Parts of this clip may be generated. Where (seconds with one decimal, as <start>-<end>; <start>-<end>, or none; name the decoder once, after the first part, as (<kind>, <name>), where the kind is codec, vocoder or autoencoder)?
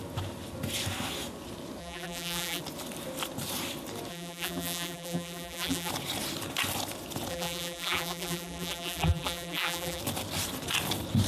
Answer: 1.8-2.6 (vocoder, BigVGAN v2); 4.1-5.9; 7.3-10.0